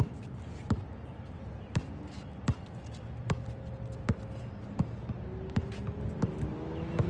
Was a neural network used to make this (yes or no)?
no